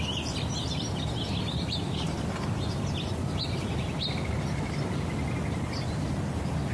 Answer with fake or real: real